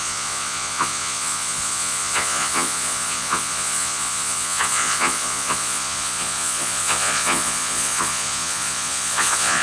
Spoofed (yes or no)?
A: yes